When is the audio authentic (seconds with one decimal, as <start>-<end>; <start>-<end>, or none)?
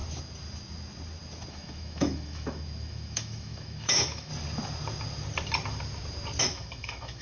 0.0-1.5; 4.3-6.4